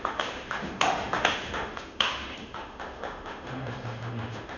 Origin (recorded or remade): remade